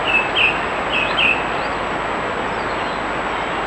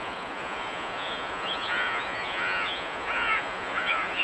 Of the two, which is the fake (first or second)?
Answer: second